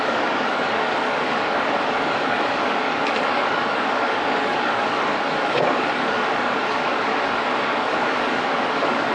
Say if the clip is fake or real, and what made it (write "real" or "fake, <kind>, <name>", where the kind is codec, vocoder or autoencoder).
fake, codec, DAC